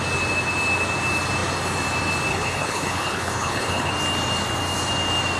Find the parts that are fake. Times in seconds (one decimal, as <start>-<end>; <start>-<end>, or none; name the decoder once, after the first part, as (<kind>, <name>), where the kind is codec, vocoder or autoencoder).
2.3-3.9 (codec, HILCodec)